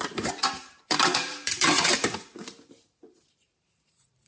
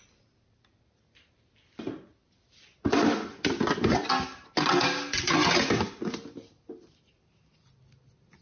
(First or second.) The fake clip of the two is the first